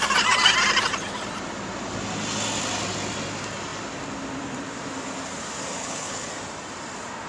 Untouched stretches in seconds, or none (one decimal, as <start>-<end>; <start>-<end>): 0.0-5.8; 6.3-7.3